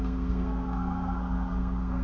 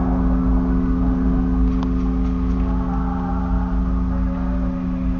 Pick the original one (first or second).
second